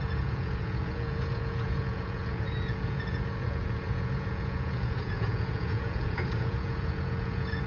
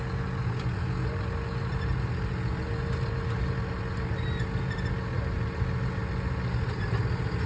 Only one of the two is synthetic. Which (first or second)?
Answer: first